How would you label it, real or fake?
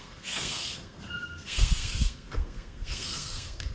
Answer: fake